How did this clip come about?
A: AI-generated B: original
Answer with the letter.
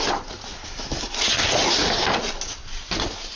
B